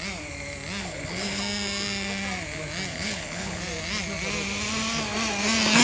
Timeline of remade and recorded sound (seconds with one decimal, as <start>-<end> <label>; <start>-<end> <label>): 0.0-0.8 recorded; 0.8-1.4 remade; 1.4-2.9 recorded; 2.9-3.6 remade; 3.6-5.8 recorded